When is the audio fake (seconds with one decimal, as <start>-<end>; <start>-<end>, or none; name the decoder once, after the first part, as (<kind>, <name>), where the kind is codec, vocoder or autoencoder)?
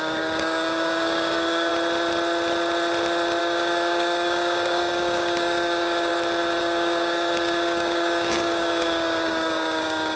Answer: 0.0-1.7 (codec, DAC); 3.4-6.1; 6.6-10.2